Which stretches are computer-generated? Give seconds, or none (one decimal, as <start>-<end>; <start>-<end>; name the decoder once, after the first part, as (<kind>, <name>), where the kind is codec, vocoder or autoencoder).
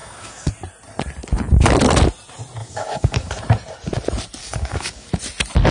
0.0-0.5 (codec, DAC); 2.6-3.3; 4.4-5.1